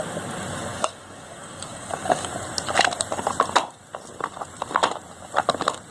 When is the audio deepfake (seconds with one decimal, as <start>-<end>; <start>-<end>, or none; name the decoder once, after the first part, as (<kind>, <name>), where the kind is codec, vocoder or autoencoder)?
0.7-2.3 (codec, DAC)